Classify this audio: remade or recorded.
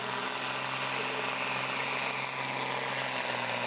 recorded